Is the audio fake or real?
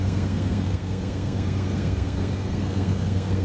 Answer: fake